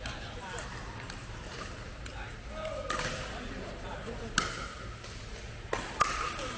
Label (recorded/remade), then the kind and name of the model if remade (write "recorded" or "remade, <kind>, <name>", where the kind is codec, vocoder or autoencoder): recorded